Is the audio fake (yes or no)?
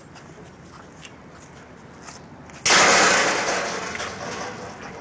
no